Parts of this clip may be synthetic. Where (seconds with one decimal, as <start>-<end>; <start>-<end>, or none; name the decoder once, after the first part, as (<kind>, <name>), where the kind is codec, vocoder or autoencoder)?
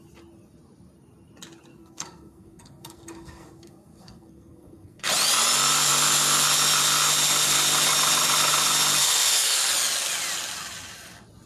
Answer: 1.7-5.1 (codec, SNAC); 9.0-9.7